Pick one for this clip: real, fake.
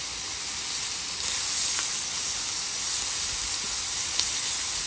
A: real